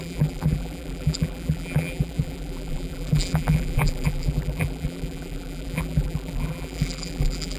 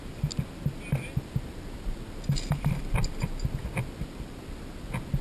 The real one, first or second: second